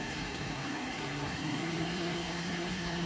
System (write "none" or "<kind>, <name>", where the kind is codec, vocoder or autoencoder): codec, SNAC